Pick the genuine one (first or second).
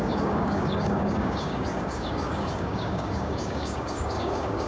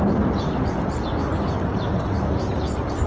second